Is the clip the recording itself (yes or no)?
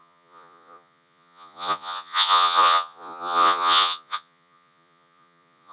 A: no